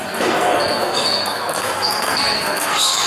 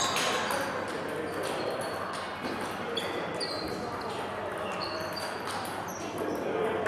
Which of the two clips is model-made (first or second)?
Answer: first